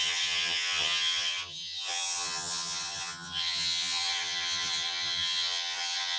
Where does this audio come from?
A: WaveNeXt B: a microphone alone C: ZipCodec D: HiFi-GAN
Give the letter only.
D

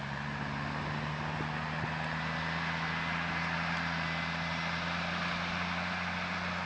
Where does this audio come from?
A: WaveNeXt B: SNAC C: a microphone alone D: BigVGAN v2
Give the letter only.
C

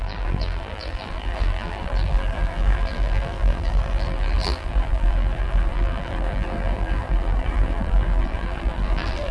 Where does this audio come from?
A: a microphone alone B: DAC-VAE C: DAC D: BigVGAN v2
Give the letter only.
D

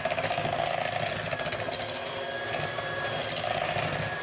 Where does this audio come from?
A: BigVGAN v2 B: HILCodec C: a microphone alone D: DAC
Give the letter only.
C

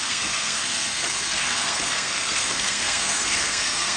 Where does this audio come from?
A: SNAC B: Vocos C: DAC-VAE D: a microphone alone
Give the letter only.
A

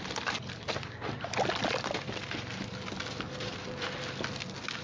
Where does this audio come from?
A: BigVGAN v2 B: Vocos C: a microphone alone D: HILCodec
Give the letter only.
C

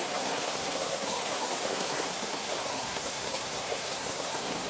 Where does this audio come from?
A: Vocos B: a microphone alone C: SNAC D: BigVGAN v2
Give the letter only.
C